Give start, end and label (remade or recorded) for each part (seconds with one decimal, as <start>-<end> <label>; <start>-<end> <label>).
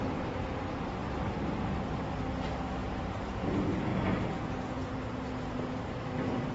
0.0-2.8 recorded; 2.8-3.5 remade; 3.5-3.9 recorded; 3.9-5.8 remade; 5.8-6.5 recorded